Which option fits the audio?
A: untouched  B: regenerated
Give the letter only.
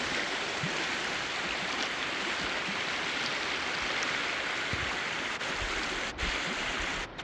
A